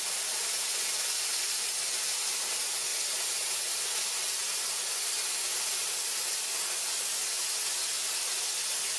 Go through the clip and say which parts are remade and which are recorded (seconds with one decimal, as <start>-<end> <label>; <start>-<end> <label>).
0.0-9.0 recorded